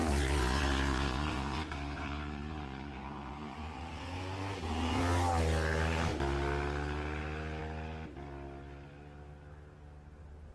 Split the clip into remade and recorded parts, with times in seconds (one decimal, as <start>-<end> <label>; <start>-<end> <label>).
0.0-5.0 remade; 5.0-10.5 recorded